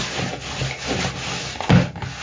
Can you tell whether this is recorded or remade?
recorded